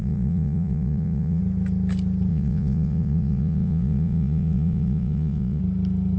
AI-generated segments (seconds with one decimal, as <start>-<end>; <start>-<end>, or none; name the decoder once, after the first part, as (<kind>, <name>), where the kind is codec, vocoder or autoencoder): 0.0-1.4 (vocoder, Vocos); 2.3-5.6